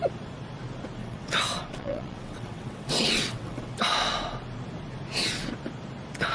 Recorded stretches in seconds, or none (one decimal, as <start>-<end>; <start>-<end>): 0.0-1.0; 3.7-6.3